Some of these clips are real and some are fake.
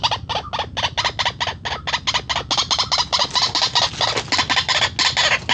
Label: real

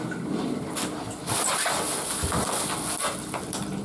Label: real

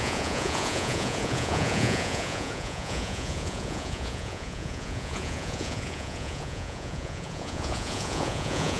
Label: fake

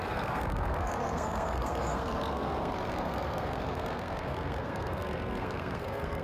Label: fake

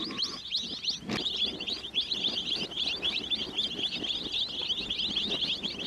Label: real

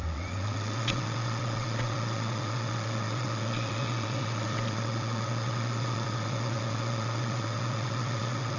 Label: fake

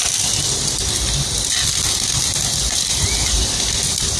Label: real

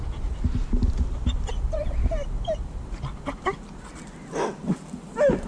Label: real